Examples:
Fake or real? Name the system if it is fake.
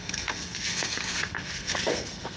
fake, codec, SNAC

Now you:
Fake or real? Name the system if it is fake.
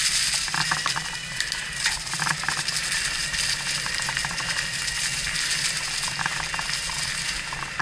real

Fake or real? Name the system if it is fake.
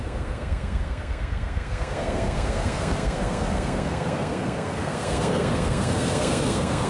fake, codec, SNAC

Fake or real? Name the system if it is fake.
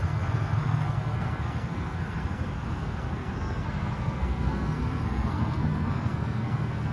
fake, codec, SNAC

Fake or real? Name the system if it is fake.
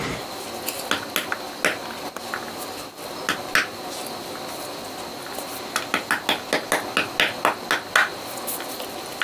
real